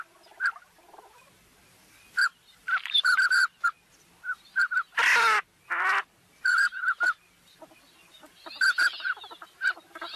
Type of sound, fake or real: fake